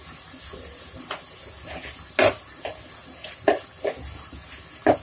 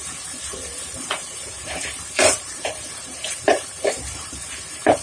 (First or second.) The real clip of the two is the first